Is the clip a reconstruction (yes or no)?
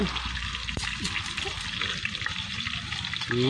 no